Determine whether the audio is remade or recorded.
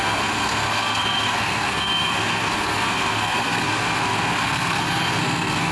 remade